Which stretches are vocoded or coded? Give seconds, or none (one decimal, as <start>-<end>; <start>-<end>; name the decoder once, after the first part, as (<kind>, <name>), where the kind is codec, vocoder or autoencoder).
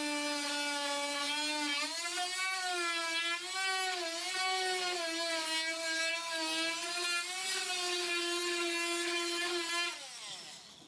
none